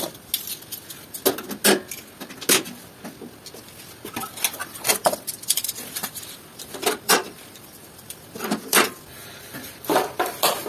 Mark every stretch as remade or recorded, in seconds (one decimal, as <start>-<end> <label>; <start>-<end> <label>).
0.0-4.6 recorded; 4.6-9.4 remade; 9.4-10.7 recorded

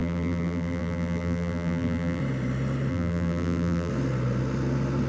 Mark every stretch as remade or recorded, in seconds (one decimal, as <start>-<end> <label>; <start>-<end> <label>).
0.0-2.2 remade; 2.2-2.9 recorded; 2.9-3.9 remade; 3.9-5.1 recorded

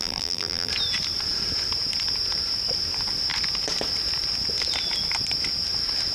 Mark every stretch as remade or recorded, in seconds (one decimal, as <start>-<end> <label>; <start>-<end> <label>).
0.0-0.7 remade; 0.7-6.1 recorded

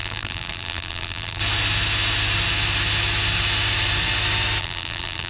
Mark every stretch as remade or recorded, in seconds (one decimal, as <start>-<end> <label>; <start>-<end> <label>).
0.0-1.4 remade; 1.4-4.6 recorded; 4.6-5.3 remade

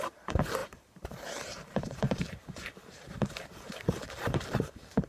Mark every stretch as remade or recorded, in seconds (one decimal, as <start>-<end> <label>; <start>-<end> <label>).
0.0-5.1 remade

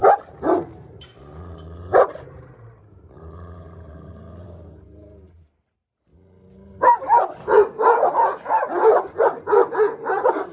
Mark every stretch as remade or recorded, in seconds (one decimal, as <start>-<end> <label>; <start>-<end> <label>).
0.0-1.0 recorded; 1.0-6.1 remade; 6.1-10.0 recorded; 10.0-10.5 remade